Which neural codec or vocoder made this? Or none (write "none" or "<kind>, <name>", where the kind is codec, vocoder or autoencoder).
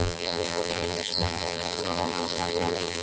vocoder, BigVGAN v2